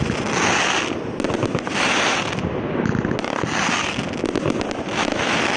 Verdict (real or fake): real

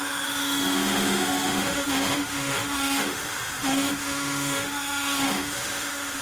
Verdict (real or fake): fake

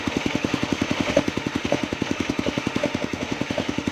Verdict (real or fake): fake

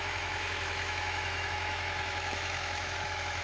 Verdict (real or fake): fake